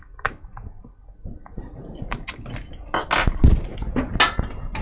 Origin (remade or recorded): recorded